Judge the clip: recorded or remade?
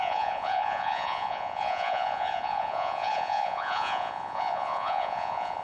remade